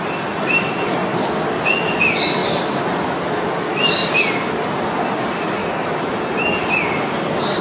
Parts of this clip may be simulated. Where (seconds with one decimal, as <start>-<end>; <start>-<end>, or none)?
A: none